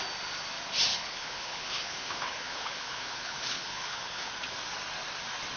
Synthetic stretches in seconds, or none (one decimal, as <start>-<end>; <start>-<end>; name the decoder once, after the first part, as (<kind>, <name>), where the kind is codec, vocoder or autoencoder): 0.9-4.3 (codec, HILCodec)